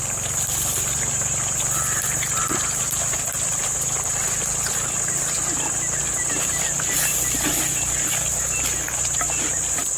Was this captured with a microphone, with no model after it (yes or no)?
yes